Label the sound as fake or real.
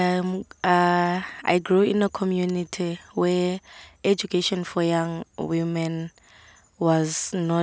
real